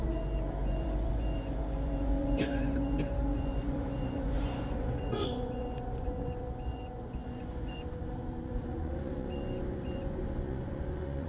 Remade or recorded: remade